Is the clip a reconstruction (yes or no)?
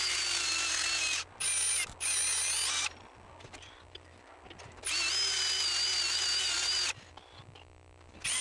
no